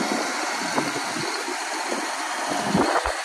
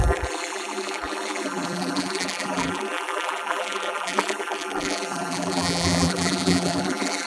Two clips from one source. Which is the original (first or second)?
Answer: first